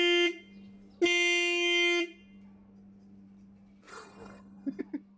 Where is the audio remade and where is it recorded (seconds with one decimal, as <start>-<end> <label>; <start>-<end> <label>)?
0.0-3.9 recorded; 3.9-4.8 remade; 4.8-5.2 recorded